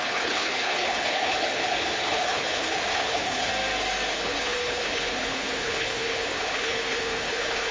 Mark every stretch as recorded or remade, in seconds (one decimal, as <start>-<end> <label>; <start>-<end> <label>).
0.0-3.5 remade; 3.5-4.1 recorded; 4.1-7.7 remade